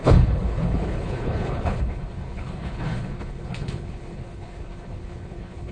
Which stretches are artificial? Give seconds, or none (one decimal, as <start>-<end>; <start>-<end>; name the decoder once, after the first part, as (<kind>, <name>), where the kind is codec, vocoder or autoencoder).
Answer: 0.0-5.7 (codec, HILCodec)